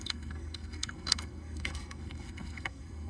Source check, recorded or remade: remade